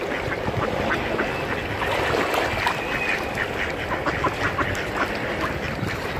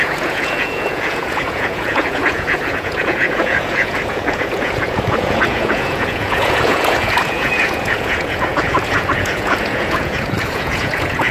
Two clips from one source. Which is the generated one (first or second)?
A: second